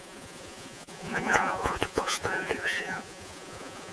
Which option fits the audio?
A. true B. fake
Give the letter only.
B